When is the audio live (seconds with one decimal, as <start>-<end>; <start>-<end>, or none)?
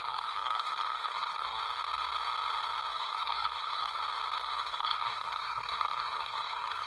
1.6-2.9; 4.0-4.4